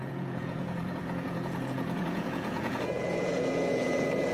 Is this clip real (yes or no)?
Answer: no